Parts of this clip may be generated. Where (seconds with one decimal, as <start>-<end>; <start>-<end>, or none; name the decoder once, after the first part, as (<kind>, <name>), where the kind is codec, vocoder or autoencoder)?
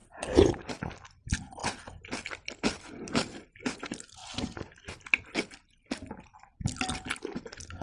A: none